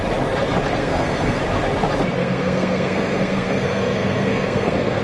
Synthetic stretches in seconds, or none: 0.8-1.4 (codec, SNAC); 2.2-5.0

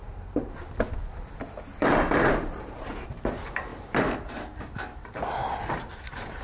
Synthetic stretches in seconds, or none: 0.0-0.6 (vocoder, BigVGAN v2); 1.7-3.3

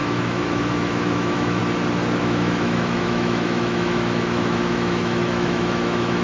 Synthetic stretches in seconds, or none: 0.0-1.6 (autoencoder, DAC-VAE); 2.2-6.2

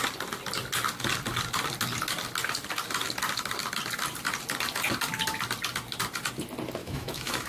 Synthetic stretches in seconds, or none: 6.8-7.5 (autoencoder, DAC-VAE)

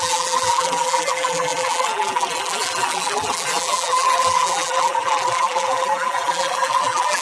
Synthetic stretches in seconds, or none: 0.0-7.2 (vocoder, BigVGAN v2)

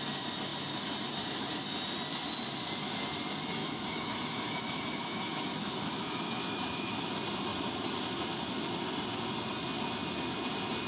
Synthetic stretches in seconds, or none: 3.6-7.1 (autoencoder, DAC-VAE)

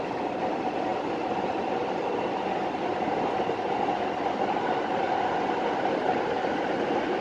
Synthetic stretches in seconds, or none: none